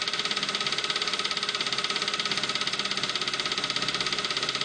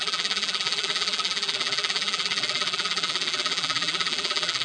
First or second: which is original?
first